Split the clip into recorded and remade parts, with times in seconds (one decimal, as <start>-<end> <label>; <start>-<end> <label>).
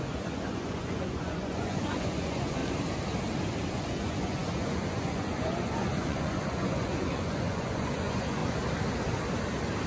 0.0-2.6 remade; 2.6-3.7 recorded; 3.7-8.4 remade; 8.4-9.9 recorded